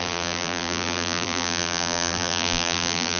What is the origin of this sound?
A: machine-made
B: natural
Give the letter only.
A